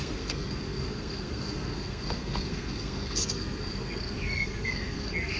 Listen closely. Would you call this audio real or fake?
fake